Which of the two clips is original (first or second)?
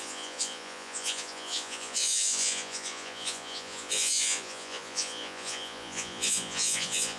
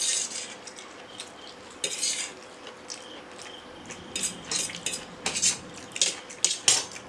second